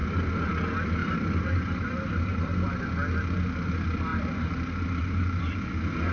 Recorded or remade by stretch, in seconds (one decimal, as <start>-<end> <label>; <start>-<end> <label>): 0.0-0.5 remade; 0.5-1.0 recorded; 1.0-2.8 remade; 2.8-4.1 recorded; 4.1-5.4 remade; 5.4-6.1 recorded